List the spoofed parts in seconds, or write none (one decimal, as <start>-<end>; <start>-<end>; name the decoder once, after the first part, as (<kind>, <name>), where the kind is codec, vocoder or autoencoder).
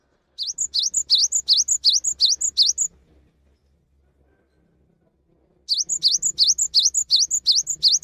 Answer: none